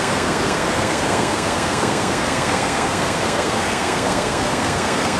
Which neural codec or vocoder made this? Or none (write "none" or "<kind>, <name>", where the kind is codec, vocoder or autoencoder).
codec, SNAC